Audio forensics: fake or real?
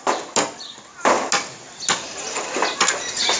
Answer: real